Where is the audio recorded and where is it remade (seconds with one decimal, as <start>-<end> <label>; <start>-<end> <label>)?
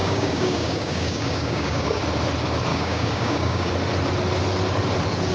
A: 0.0-2.0 remade; 2.0-2.7 recorded; 2.7-3.7 remade; 3.7-5.3 recorded